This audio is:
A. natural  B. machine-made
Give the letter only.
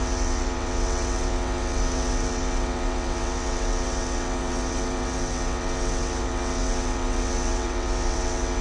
B